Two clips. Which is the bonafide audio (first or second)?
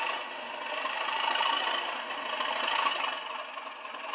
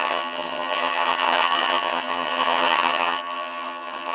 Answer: first